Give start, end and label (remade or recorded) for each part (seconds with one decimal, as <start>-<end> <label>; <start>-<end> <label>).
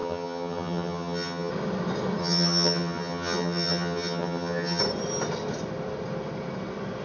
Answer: 0.0-1.5 remade; 1.5-2.2 recorded; 2.2-4.8 remade; 4.8-7.0 recorded